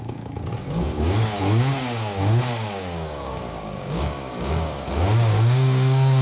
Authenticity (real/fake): fake